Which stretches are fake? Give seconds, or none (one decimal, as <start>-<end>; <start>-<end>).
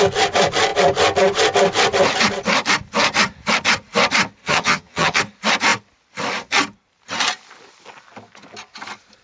4.4-5.2